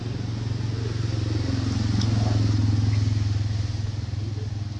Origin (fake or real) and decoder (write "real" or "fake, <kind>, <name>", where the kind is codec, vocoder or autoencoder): real